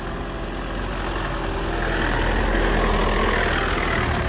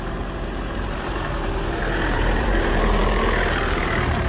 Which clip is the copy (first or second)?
second